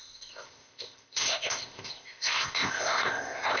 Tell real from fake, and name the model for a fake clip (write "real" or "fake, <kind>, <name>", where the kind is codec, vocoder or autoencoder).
fake, codec, ZipCodec